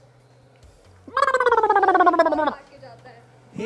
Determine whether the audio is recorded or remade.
recorded